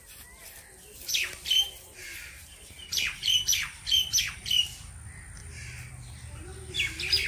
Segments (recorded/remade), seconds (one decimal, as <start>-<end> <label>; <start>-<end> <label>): 0.0-1.1 recorded; 1.1-4.9 remade; 4.9-5.4 recorded; 5.4-5.9 remade; 5.9-7.3 recorded